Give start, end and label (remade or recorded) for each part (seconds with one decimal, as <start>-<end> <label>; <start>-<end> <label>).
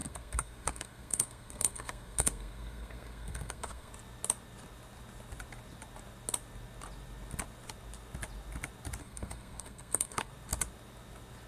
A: 0.0-3.9 remade; 3.9-9.0 recorded; 9.0-10.3 remade; 10.3-11.5 recorded